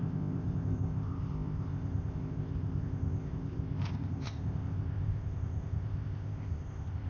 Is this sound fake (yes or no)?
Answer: yes